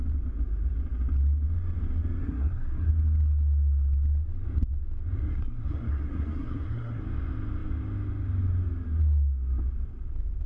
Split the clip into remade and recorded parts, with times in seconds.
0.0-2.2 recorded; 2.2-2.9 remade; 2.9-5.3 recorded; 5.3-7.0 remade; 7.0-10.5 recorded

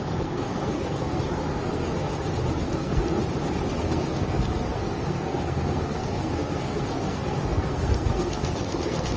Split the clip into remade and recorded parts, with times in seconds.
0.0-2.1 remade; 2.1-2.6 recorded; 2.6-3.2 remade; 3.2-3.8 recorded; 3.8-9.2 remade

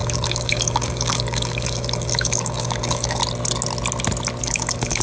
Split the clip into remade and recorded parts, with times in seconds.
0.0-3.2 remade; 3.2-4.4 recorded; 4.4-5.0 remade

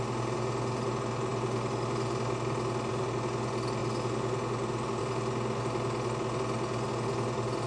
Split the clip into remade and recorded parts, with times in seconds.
0.0-7.7 recorded

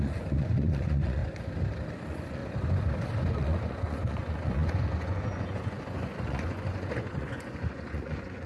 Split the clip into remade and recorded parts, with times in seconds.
0.0-1.2 remade; 1.2-1.9 recorded; 1.9-2.4 remade; 2.4-3.3 recorded; 3.3-8.5 remade